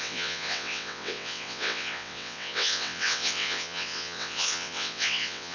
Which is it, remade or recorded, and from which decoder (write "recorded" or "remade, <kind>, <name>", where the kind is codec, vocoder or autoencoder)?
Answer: remade, vocoder, WaveNeXt